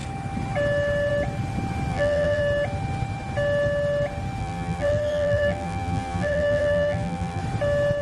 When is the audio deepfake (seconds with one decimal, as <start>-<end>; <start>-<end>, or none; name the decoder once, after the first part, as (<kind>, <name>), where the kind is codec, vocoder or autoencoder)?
1.9-2.4 (vocoder, BigVGAN v2); 4.4-7.4